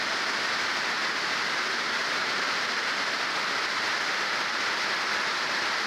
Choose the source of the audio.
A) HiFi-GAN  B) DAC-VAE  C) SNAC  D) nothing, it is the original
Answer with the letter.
D